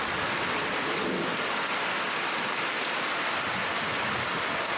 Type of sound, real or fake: real